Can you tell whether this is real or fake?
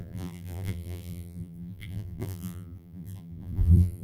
fake